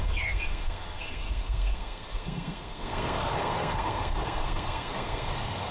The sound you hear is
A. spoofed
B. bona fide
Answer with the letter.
A